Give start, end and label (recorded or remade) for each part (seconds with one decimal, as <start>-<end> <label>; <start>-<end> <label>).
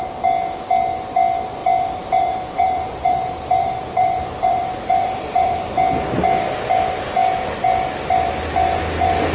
0.0-1.6 recorded; 1.6-5.7 remade; 5.7-9.3 recorded